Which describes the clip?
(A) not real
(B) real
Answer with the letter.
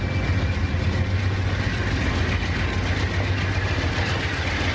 B